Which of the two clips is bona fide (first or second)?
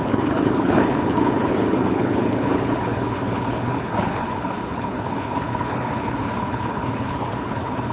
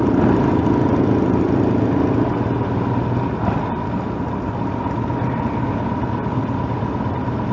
second